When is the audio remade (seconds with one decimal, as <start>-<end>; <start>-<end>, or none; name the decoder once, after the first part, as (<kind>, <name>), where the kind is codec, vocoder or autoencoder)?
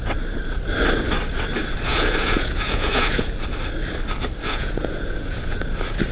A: 1.9-3.3 (vocoder, Vocos); 4.4-5.6